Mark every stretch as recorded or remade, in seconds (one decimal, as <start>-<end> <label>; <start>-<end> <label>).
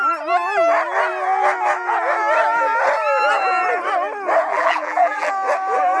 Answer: 0.0-4.5 recorded; 4.5-5.3 remade; 5.3-6.0 recorded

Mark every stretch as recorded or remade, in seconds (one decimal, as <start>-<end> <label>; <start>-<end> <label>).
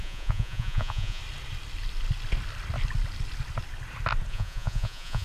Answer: 0.0-1.2 remade; 1.2-4.3 recorded; 4.3-5.2 remade